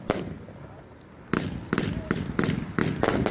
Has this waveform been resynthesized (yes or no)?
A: no